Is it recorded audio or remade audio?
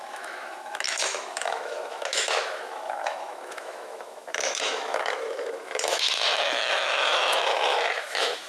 remade